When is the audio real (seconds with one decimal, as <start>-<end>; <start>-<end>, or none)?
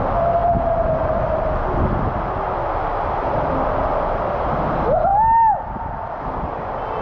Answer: 0.0-7.0